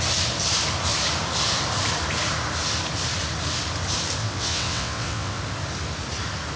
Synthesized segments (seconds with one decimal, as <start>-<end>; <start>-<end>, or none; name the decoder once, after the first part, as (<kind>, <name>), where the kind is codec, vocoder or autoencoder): 4.2-5.4 (vocoder, WaveNeXt)